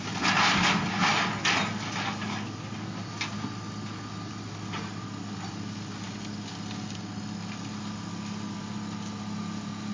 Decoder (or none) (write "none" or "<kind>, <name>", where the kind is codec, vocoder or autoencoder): none